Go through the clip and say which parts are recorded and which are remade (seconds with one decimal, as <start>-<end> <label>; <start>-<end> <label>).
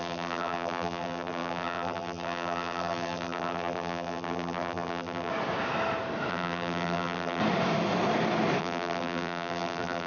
0.0-5.3 remade; 5.3-6.3 recorded; 6.3-7.4 remade; 7.4-8.6 recorded; 8.6-10.1 remade